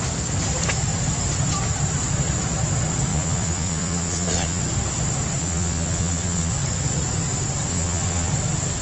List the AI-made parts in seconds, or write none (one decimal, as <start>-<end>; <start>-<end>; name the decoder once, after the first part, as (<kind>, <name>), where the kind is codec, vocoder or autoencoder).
3.1-4.6 (vocoder, Vocos); 5.4-6.5; 7.7-8.3